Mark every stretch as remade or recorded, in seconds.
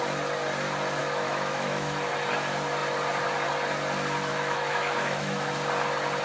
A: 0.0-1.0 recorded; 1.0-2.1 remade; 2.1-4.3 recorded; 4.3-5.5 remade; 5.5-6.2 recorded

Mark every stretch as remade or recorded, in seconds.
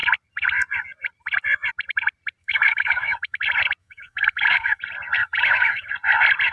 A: 0.0-2.4 recorded; 2.4-3.4 remade; 3.4-3.8 recorded; 3.8-4.8 remade; 4.8-5.2 recorded; 5.2-5.9 remade; 5.9-6.5 recorded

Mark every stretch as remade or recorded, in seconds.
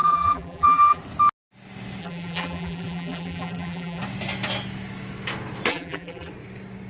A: 0.0-1.0 remade; 1.0-2.0 recorded; 2.0-4.0 remade; 4.0-5.7 recorded; 5.7-6.3 remade; 6.3-6.9 recorded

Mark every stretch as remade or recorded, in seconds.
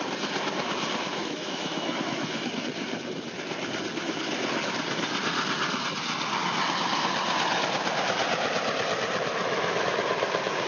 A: 0.0-1.2 recorded; 1.2-2.5 remade; 2.5-9.3 recorded; 9.3-9.9 remade; 9.9-10.7 recorded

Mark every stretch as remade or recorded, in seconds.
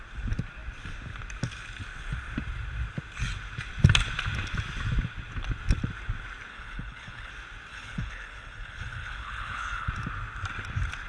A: 0.0-6.5 recorded; 6.5-7.3 remade; 7.3-7.7 recorded; 7.7-9.9 remade; 9.9-11.1 recorded